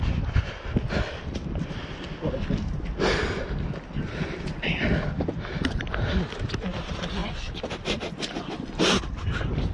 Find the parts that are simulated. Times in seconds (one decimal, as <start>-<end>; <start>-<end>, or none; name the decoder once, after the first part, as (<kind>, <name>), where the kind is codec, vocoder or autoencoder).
none